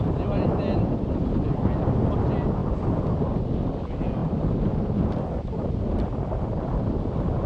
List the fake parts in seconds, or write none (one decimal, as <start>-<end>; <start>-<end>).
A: none